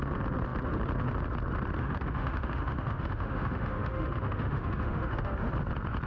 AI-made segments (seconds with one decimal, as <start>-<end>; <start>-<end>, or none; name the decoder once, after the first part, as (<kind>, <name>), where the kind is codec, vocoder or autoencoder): 1.8-5.5 (autoencoder, DAC-VAE)